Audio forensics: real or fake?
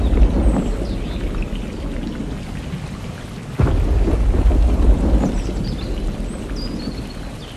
real